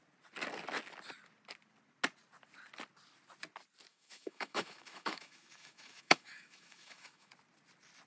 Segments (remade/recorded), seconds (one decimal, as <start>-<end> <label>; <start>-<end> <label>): 0.0-3.9 recorded; 3.9-7.3 remade; 7.3-8.1 recorded